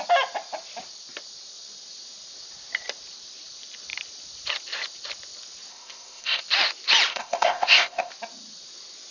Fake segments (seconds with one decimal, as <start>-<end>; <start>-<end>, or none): 5.7-6.4; 7.1-8.1